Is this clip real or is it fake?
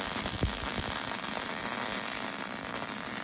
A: real